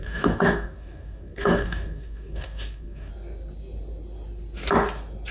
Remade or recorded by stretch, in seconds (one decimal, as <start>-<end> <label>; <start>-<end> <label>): 0.0-3.1 remade; 3.1-5.3 recorded